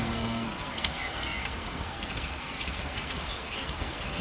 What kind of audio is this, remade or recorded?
remade